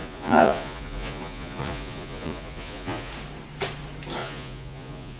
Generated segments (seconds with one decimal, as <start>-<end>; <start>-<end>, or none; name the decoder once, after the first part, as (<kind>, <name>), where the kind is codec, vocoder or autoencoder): 0.0-3.1 (vocoder, Vocos); 4.2-5.2

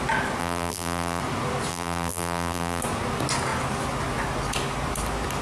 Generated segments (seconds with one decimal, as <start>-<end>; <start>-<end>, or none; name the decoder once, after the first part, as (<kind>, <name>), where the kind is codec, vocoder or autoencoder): 0.4-1.2 (vocoder, BigVGAN v2); 1.7-2.8

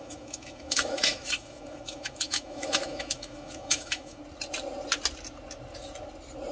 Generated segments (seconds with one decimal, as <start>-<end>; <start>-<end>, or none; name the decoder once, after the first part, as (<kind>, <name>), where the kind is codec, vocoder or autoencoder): 0.0-4.2 (autoencoder, DAC-VAE)

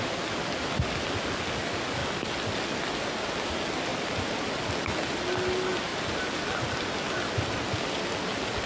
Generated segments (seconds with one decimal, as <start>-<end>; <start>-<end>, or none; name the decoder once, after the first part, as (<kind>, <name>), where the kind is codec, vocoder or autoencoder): 3.9-4.6 (vocoder, BigVGAN v2)

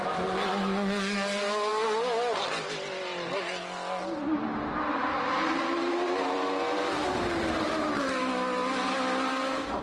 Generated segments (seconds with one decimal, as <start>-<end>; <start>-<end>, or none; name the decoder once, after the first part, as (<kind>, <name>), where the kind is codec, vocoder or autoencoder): none

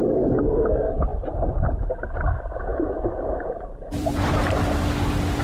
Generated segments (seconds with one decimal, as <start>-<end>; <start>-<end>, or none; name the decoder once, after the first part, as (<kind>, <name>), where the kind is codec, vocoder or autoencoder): 1.1-1.9 (vocoder, BigVGAN v2); 2.7-4.4

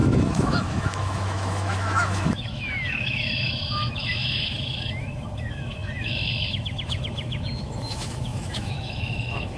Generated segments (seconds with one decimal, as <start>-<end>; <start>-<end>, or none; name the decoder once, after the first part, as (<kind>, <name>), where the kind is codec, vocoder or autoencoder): 0.0-9.6 (autoencoder, DAC-VAE)

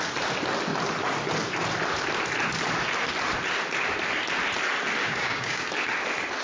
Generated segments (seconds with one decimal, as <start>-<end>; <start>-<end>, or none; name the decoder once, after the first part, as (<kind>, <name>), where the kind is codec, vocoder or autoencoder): 5.0-5.6 (codec, DAC)